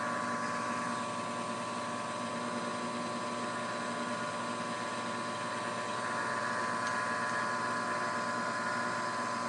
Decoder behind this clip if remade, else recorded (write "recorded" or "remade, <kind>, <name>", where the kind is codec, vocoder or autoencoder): recorded